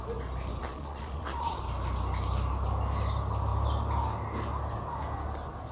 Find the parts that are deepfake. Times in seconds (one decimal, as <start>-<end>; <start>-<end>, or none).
0.6-1.6